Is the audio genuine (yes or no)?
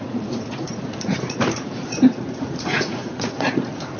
no